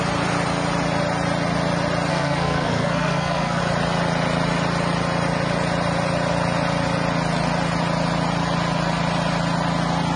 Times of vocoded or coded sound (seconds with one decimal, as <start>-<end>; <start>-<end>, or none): 2.1-3.6